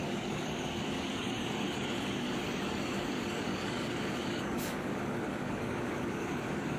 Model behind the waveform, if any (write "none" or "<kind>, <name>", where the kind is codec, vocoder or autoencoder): codec, DAC